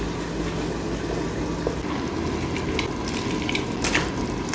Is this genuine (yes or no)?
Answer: yes